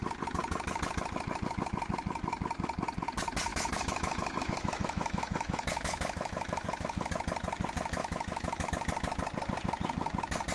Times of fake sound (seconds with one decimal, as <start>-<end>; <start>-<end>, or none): 3.5-7.1; 8.0-8.7

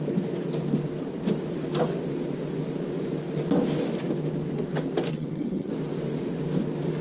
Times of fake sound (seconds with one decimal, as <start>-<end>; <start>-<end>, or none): 5.1-5.7

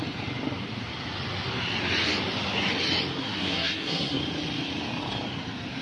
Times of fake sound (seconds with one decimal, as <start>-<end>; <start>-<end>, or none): 3.2-4.2

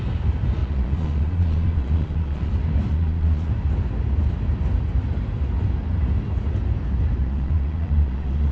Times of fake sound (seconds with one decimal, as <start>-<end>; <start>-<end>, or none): 0.6-2.5; 2.9-3.5; 7.2-8.5

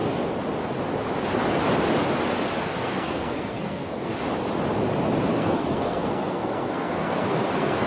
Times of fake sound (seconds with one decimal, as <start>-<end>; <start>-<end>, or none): 2.6-4.1; 5.3-7.9

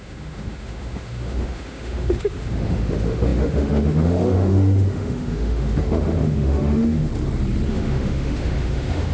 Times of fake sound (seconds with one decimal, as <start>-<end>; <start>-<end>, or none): 0.0-7.1; 7.7-9.1

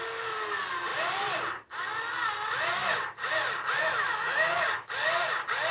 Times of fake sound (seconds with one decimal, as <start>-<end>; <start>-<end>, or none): 3.8-4.9

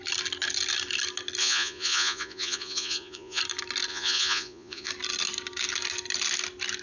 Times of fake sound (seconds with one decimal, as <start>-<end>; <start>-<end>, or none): 1.4-3.4; 3.9-4.9